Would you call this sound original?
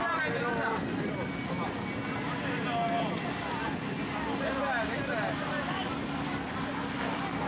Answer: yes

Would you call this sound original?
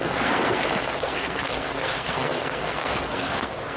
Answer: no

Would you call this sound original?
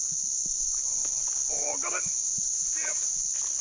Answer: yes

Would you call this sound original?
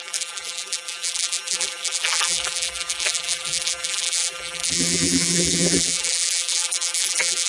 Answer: no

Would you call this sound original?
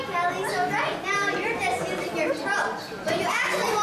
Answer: yes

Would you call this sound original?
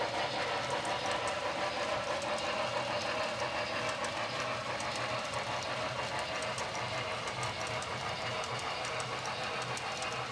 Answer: yes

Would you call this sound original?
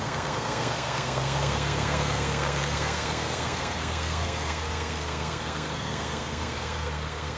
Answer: no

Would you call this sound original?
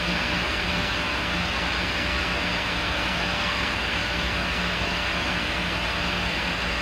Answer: no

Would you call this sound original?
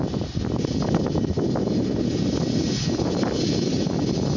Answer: yes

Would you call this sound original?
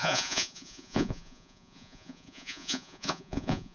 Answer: no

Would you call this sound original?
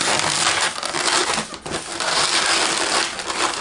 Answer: yes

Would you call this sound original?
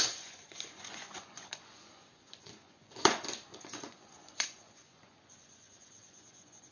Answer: no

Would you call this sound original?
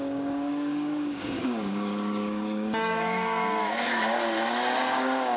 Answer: no